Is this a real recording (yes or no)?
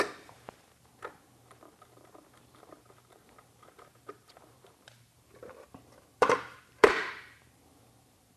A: no